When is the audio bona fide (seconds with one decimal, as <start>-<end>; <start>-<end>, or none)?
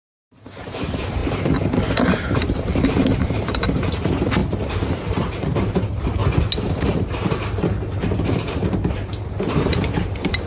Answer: 6.2-6.7